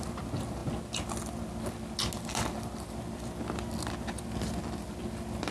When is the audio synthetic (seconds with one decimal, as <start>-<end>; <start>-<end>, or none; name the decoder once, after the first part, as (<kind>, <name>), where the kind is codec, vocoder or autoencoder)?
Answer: none